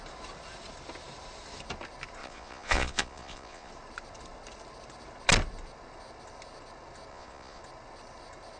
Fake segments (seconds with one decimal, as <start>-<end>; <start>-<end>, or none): 2.2-3.7; 7.1-7.6